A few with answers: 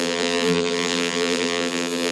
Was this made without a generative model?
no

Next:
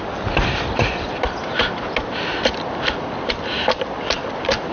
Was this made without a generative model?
yes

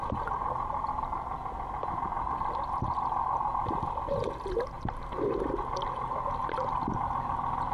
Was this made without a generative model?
yes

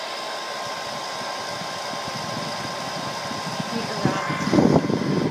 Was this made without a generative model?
yes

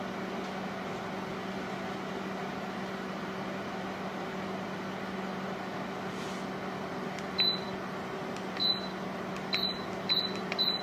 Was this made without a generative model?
yes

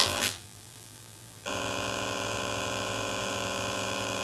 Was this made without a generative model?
no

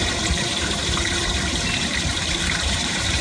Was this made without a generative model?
no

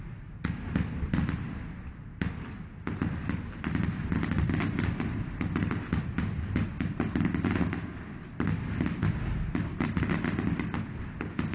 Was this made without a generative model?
yes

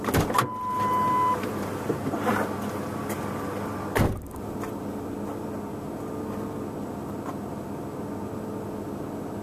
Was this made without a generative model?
yes